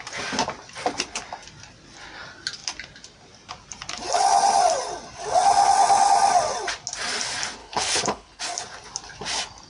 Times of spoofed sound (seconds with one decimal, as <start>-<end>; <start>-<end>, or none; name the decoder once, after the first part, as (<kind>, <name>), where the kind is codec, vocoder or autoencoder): 7.6-8.4 (codec, HILCodec)